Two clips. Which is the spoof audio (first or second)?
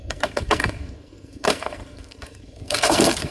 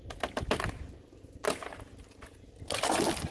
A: first